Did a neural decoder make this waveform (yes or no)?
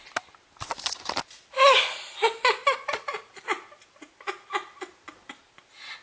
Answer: no